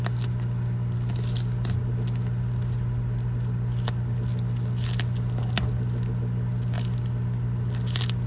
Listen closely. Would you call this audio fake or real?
real